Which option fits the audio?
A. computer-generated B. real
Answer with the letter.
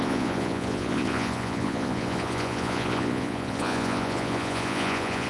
A